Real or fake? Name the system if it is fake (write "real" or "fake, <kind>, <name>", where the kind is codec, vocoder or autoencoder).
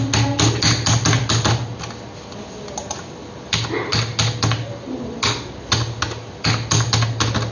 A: real